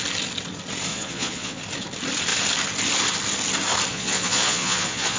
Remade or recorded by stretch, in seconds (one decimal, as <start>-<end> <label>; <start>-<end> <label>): 0.0-0.9 recorded; 0.9-1.6 remade; 1.6-3.9 recorded; 3.9-5.2 remade